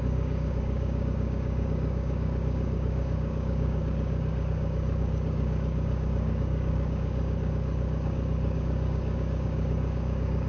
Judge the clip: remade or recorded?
remade